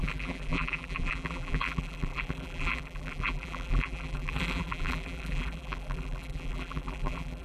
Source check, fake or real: fake